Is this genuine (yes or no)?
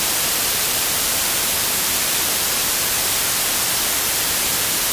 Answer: no